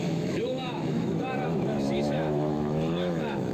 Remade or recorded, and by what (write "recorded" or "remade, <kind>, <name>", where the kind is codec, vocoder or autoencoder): remade, autoencoder, DAC-VAE